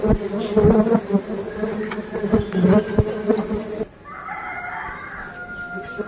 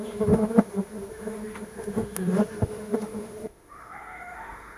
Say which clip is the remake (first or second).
second